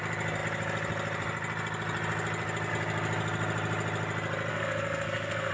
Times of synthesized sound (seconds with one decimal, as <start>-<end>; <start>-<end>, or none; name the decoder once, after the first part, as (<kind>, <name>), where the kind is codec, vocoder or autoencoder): 4.5-5.5 (codec, SNAC)